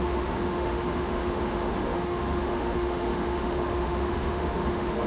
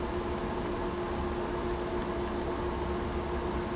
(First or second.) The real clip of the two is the second